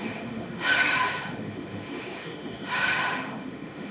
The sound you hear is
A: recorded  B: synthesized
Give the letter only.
B